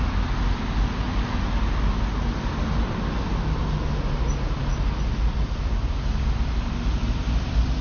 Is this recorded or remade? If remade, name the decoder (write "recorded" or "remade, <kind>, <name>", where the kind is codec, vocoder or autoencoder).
recorded